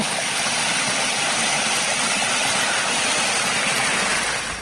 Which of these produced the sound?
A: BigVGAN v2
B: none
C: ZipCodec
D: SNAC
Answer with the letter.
A